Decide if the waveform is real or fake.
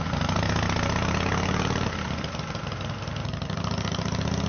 real